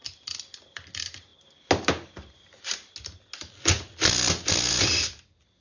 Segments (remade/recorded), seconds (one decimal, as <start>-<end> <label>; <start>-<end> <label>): 0.0-5.6 recorded